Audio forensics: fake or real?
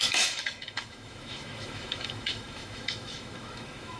fake